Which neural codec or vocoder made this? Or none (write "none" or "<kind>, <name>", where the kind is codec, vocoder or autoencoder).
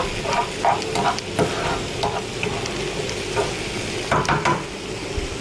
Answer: none